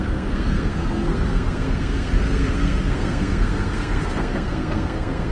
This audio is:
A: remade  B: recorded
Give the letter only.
A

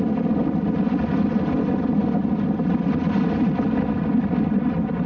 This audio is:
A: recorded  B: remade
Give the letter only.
A